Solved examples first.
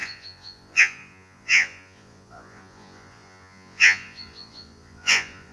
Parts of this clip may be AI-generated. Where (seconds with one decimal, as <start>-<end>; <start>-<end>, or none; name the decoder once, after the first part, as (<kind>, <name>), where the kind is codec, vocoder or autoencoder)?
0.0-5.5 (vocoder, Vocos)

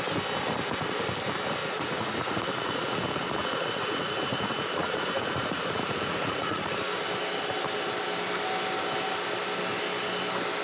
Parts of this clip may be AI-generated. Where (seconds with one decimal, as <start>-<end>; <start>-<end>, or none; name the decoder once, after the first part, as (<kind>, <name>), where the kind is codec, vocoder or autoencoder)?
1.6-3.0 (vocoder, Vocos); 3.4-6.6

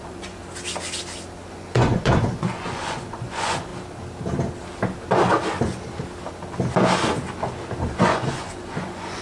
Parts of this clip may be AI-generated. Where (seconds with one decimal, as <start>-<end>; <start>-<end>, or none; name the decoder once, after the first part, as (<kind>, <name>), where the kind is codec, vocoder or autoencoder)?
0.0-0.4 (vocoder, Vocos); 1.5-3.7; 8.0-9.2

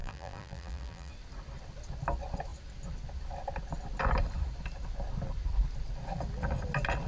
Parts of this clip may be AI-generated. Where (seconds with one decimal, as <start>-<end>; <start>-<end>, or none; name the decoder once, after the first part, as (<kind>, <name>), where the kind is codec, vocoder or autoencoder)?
0.0-1.1 (vocoder, BigVGAN v2)

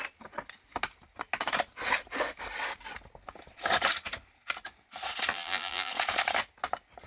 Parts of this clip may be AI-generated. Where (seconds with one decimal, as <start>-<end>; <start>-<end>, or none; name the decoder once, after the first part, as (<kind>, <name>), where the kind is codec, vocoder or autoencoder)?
5.3-5.9 (vocoder, BigVGAN v2)

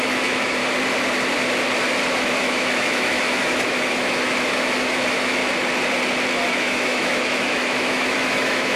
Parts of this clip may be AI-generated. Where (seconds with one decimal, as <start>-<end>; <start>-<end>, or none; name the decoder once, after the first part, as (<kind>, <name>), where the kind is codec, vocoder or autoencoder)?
0.0-0.6 (autoencoder, DAC-VAE); 2.1-5.4; 6.5-8.8

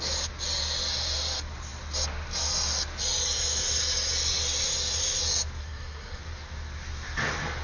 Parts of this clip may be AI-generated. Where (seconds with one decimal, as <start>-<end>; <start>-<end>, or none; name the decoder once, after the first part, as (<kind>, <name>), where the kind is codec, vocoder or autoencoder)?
5.6-6.2 (codec, SNAC)

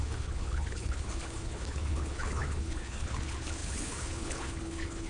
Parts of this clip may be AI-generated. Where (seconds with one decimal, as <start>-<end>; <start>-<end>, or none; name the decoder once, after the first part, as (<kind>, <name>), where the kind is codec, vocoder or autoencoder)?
0.0-5.1 (codec, HILCodec)